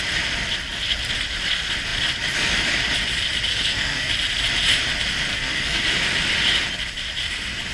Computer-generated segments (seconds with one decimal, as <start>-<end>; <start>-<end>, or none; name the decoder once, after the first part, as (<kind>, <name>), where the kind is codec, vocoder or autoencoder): 3.5-4.1 (codec, SNAC); 5.3-5.8